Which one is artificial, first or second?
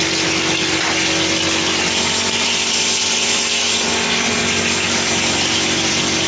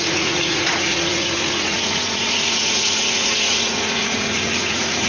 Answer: second